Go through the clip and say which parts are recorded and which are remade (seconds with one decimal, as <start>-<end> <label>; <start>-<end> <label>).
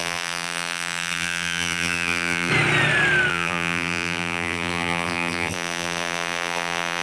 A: 0.0-2.5 remade; 2.5-3.3 recorded; 3.3-7.0 remade